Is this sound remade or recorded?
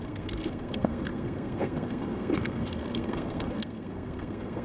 remade